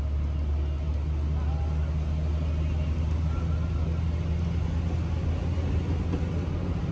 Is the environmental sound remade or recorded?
recorded